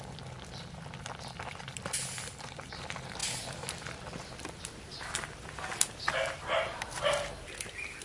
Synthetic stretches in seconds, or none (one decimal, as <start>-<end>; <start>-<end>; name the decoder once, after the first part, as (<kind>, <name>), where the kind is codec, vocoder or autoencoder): 0.0-3.2 (vocoder, BigVGAN v2); 4.6-8.0